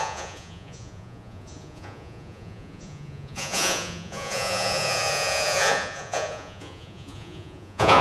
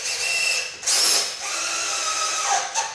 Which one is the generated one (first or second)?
first